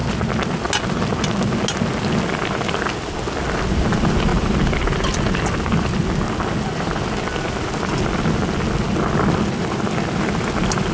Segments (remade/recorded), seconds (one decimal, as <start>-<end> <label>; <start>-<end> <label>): 0.0-10.9 recorded